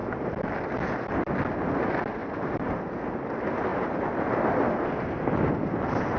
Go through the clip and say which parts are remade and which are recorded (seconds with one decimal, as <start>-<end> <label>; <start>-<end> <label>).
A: 0.0-2.2 recorded; 2.2-2.8 remade; 2.8-6.2 recorded